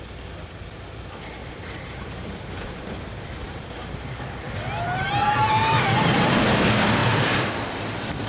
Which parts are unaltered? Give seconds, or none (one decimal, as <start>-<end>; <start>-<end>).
0.0-1.4; 6.4-7.0; 7.5-8.3